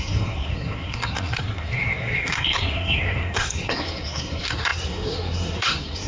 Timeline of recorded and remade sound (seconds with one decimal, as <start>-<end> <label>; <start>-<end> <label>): 0.0-6.1 remade